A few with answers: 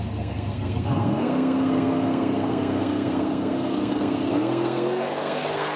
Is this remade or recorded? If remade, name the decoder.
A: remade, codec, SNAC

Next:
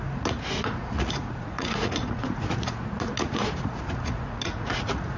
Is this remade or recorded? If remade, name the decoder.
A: remade, vocoder, Vocos